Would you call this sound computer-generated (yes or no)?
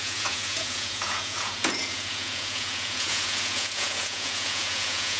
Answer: yes